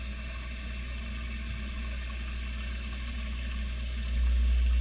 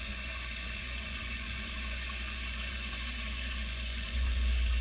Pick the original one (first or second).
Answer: first